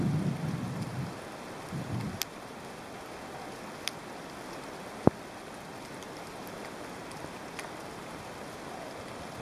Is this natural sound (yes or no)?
yes